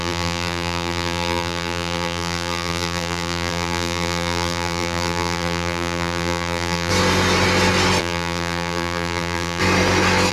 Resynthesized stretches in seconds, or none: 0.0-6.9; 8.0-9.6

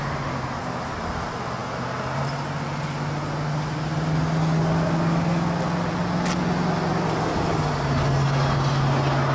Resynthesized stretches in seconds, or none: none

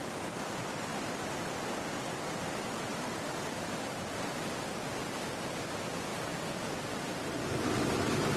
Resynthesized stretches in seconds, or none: 0.9-1.7; 2.9-4.3; 6.1-7.9

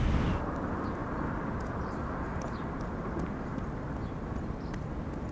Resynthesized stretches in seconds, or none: 1.0-1.6; 2.3-5.3

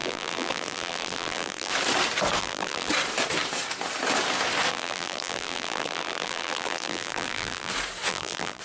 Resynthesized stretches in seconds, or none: 0.0-1.7; 2.4-2.9; 4.7-7.7; 8.1-8.6

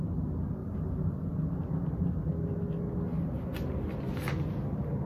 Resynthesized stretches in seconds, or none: 0.6-1.3

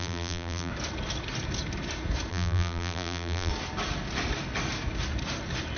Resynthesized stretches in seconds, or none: 0.0-0.7; 2.3-3.5

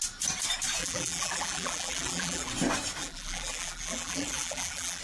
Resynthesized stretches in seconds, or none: 0.8-2.5; 3.0-5.0